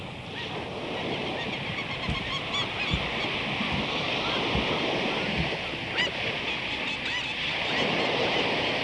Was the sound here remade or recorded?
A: recorded